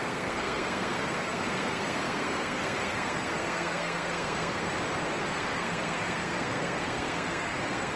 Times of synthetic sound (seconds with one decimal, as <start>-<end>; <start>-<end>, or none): 0.0-4.7; 5.2-8.0